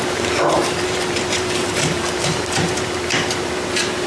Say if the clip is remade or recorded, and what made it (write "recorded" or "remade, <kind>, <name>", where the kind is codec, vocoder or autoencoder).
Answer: remade, vocoder, BigVGAN v2